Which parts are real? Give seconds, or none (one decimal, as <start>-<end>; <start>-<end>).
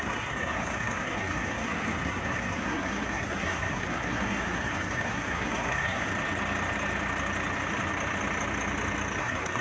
6.1-9.2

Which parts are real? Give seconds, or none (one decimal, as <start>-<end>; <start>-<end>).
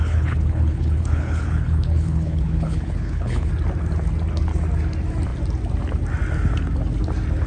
3.5-7.5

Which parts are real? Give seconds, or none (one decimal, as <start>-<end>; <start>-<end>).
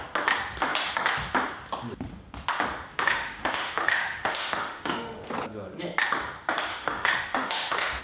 0.0-2.9; 5.3-6.7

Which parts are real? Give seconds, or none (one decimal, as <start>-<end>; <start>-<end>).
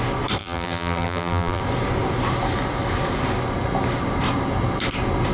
0.0-0.4; 1.6-5.3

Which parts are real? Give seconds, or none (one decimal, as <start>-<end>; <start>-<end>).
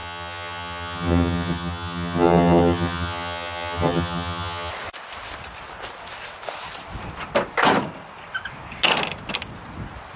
4.7-10.2